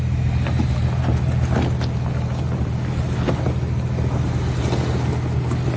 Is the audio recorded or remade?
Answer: recorded